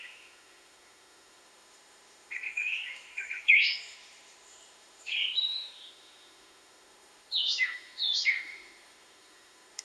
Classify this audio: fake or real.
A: fake